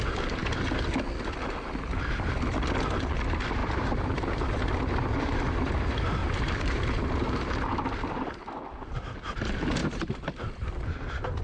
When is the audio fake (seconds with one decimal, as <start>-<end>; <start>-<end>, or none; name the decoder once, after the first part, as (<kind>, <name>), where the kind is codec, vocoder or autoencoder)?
3.6-5.7 (vocoder, BigVGAN v2); 6.2-7.5; 9.8-10.7